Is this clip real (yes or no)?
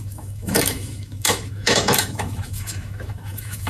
no